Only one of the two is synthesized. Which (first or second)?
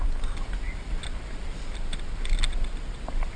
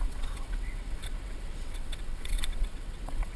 second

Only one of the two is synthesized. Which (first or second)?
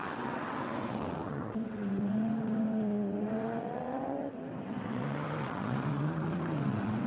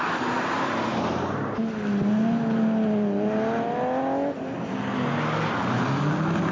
first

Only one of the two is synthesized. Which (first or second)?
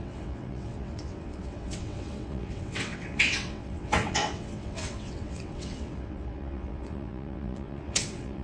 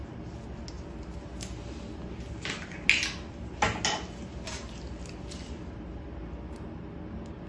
first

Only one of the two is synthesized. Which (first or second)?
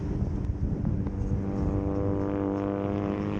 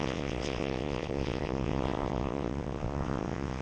second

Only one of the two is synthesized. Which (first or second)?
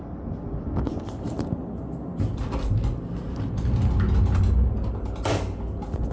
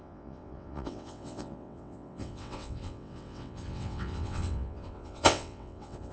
second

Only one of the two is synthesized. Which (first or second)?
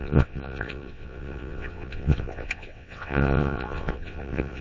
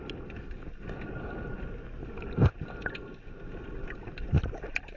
first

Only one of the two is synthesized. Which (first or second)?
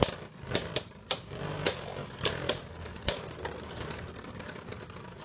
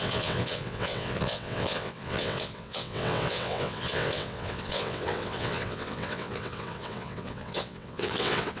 second